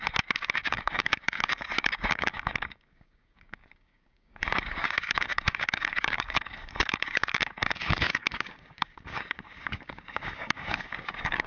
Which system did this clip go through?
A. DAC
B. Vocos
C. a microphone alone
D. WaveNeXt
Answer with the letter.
A